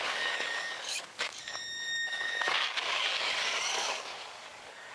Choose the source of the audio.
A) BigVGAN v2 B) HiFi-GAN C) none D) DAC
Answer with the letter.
D